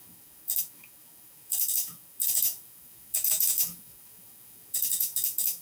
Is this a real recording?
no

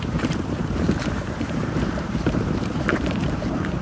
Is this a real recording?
no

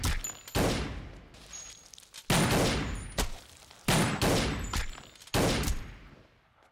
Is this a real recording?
yes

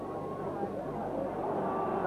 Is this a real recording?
yes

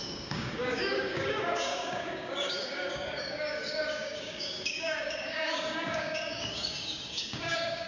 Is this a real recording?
no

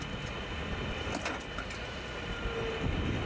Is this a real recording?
yes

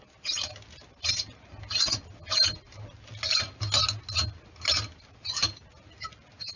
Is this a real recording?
yes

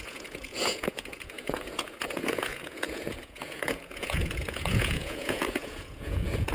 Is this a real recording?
no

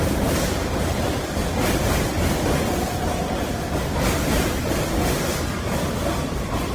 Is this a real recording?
yes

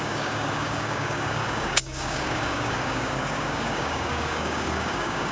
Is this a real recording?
no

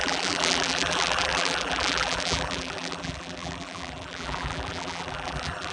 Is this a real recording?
no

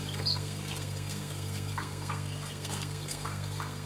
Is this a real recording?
no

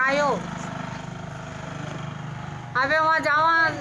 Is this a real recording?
yes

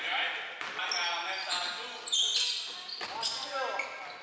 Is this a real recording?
yes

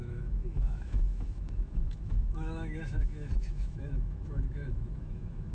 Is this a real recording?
no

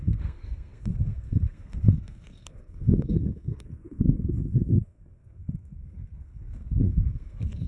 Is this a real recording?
no